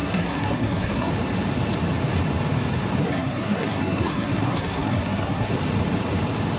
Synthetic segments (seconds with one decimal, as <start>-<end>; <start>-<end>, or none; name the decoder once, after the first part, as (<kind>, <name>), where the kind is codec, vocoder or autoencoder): 0.0-1.1 (codec, SNAC); 3.0-5.5